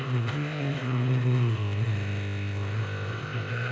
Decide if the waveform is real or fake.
fake